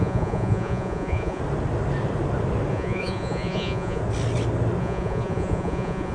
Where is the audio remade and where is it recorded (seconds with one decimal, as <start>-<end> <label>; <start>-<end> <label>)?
0.0-1.4 remade; 1.4-2.7 recorded; 2.7-4.0 remade; 4.0-4.8 recorded; 4.8-6.1 remade